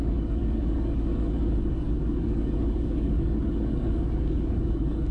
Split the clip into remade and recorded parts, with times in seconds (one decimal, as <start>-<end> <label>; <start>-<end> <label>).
0.0-5.1 remade